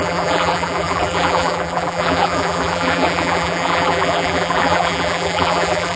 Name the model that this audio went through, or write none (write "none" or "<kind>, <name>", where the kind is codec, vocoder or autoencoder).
vocoder, BigVGAN v2